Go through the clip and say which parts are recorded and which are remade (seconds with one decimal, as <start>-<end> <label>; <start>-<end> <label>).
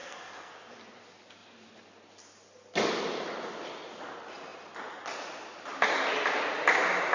0.0-0.5 remade; 0.5-7.1 recorded